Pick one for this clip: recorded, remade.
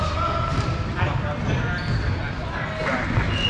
recorded